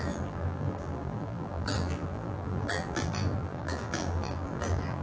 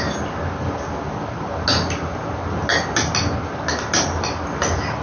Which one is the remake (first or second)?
first